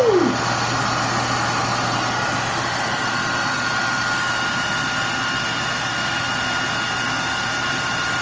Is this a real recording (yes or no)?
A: yes